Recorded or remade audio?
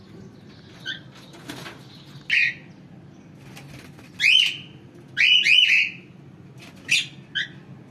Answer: recorded